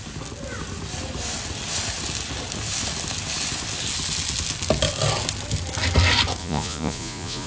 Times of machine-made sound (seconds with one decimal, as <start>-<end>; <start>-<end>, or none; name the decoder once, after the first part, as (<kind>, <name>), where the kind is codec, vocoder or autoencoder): 6.4-7.5 (vocoder, Vocos)